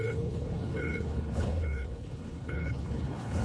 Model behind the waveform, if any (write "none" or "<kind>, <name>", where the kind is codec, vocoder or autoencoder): codec, HILCodec